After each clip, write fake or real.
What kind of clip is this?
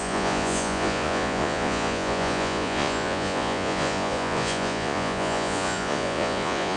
fake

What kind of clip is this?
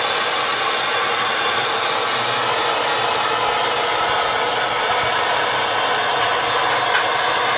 real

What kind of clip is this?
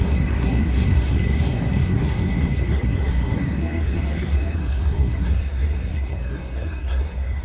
fake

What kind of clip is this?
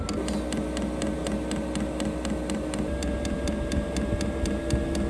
real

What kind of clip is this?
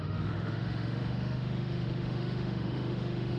fake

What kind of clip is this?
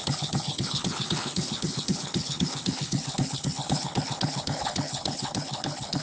fake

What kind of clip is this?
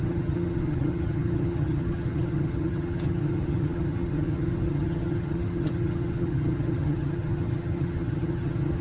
fake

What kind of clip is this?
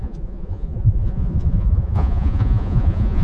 fake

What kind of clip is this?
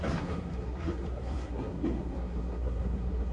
fake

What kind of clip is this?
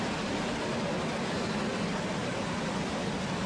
real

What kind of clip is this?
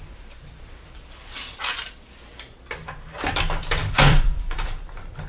fake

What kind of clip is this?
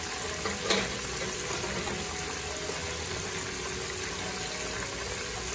real